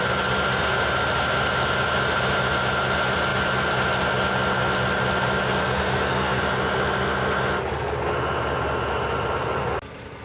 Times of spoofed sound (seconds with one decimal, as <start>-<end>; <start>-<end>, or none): 5.6-6.4